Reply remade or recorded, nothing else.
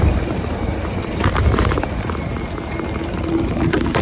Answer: recorded